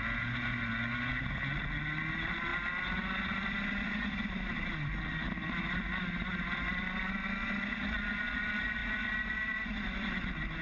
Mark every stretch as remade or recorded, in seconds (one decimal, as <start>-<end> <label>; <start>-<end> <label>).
0.0-10.6 recorded